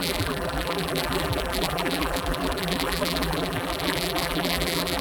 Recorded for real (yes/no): no